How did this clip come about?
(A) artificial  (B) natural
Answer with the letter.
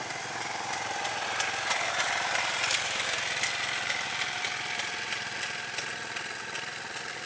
B